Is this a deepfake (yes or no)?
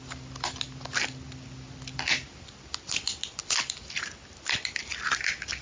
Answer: no